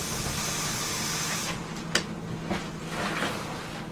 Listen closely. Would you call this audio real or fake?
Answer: real